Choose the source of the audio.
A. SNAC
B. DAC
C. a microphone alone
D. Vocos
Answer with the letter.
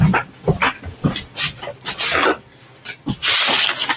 C